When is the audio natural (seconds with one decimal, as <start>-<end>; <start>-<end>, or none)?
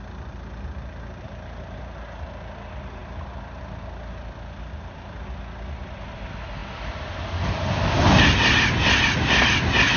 0.0-10.0